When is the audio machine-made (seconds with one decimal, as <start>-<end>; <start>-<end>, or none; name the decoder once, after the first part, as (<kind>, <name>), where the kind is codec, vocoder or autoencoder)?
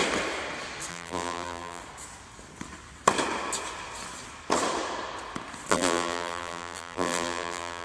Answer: 0.9-1.8 (vocoder, BigVGAN v2); 5.7-7.8